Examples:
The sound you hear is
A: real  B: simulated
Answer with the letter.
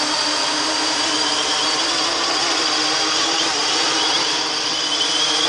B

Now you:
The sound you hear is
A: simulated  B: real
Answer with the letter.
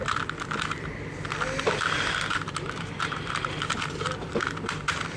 A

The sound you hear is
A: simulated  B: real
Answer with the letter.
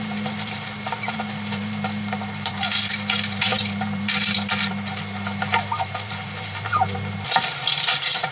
A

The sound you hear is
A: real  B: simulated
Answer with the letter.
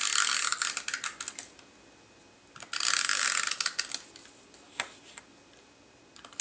A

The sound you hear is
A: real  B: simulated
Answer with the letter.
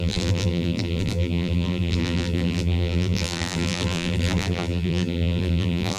B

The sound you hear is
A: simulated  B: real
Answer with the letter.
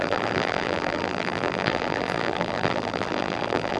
A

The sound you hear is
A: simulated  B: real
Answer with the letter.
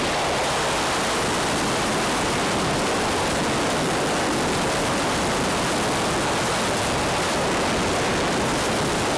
B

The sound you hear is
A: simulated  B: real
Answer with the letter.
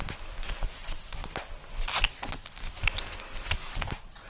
B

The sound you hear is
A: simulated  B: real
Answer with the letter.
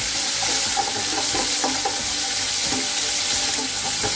B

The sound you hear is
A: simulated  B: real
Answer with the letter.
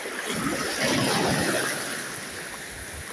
B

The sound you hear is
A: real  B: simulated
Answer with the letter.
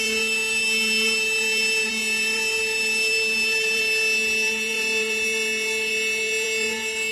B